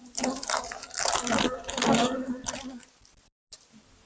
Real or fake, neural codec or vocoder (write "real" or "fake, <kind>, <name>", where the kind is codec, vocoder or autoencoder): real